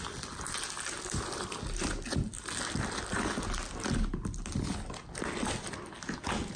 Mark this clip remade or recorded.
recorded